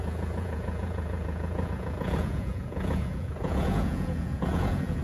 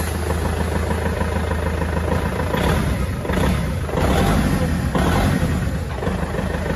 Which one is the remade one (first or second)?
first